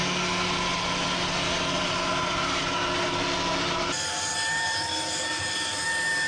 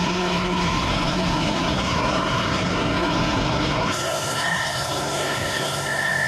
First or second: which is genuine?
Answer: first